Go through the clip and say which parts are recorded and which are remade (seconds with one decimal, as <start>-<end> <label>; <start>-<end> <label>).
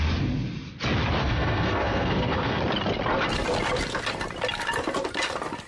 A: 0.0-1.2 recorded; 1.2-2.6 remade; 2.6-5.7 recorded